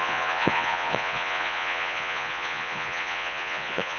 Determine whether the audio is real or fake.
fake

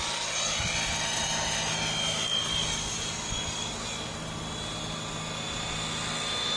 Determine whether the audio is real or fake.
real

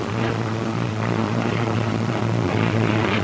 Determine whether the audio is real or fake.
fake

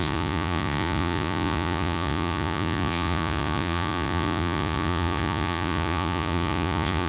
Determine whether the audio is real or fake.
fake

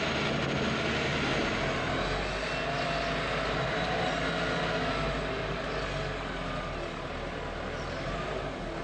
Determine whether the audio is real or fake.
real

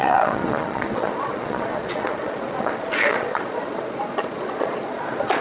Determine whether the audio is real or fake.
fake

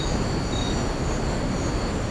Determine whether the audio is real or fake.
real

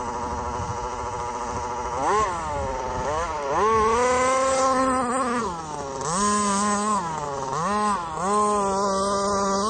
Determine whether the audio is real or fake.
real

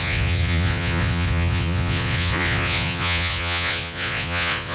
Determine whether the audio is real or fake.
fake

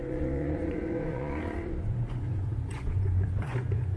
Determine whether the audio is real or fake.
fake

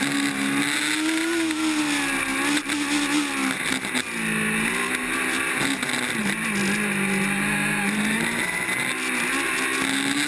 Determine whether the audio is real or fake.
real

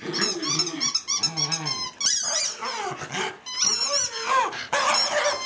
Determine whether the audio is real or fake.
real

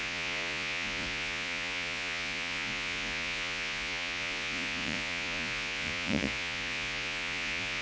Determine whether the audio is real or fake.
fake